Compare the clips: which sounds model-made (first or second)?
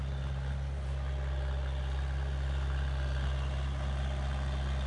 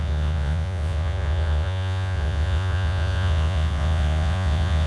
second